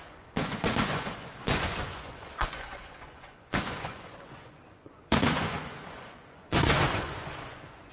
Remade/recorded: remade